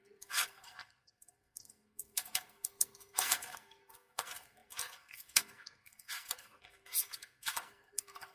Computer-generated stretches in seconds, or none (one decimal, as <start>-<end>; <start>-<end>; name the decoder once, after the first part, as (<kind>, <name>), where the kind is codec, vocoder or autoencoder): 0.0-8.3 (codec, SNAC)